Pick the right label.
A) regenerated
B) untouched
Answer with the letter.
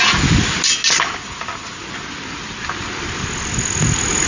B